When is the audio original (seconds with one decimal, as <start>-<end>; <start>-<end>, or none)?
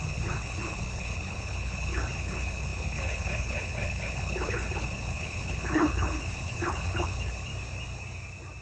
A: 7.5-8.6